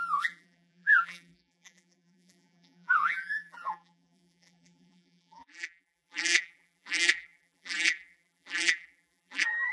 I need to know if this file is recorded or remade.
remade